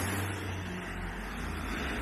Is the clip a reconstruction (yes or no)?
no